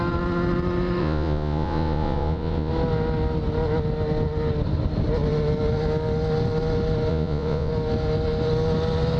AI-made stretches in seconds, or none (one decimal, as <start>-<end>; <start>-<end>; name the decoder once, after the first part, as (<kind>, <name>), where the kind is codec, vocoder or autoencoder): 1.0-2.7 (vocoder, Vocos); 7.1-7.7